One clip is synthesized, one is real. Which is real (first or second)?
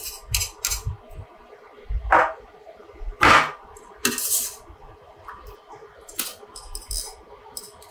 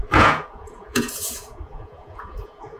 first